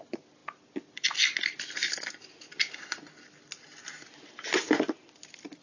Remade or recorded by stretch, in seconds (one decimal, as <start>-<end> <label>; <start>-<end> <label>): 0.0-5.6 recorded